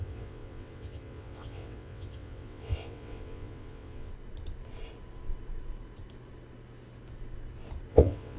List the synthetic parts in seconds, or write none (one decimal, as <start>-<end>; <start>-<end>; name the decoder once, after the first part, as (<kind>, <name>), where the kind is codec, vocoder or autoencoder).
0.0-4.1 (vocoder, WaveNeXt); 7.9-8.4